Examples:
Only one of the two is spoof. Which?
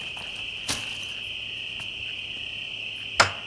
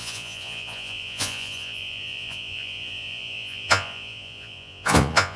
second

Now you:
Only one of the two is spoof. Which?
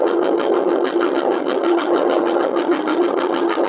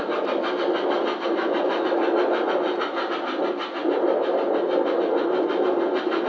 first